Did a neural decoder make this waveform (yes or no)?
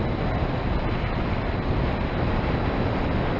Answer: no